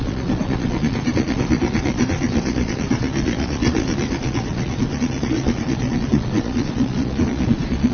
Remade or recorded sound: remade